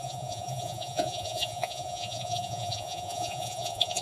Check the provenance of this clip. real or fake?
fake